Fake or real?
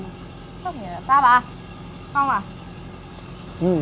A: real